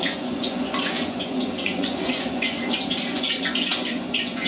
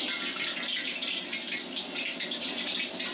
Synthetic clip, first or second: first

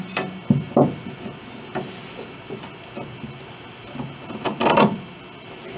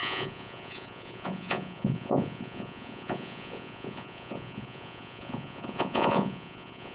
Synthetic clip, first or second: second